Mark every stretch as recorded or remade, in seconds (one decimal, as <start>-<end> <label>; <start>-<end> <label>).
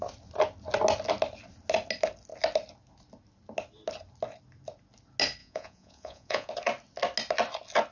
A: 0.0-5.4 recorded; 5.4-6.5 remade; 6.5-7.9 recorded